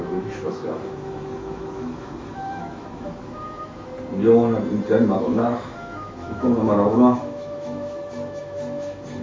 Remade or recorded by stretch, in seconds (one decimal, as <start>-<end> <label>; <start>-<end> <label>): 0.0-3.9 remade; 3.9-5.2 recorded; 5.2-9.2 remade